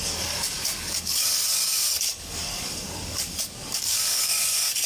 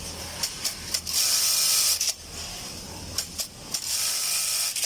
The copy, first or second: first